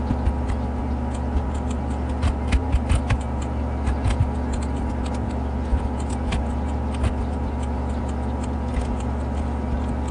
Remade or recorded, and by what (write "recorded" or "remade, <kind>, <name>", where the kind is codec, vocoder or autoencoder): recorded